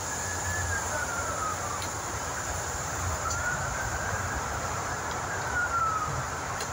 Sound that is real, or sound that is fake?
fake